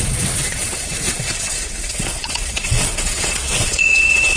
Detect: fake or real fake